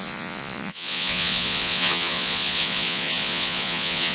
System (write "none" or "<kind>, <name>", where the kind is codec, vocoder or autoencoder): vocoder, Vocos